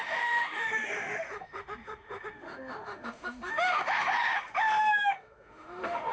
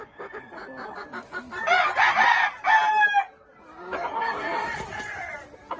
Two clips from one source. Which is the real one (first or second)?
second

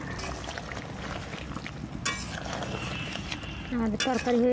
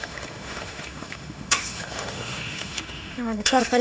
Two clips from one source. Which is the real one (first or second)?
first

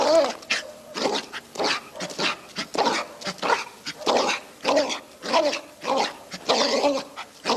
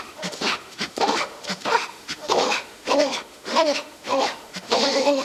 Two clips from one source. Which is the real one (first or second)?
first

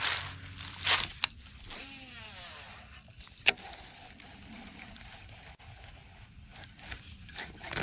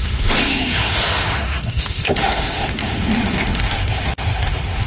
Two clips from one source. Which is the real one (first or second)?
first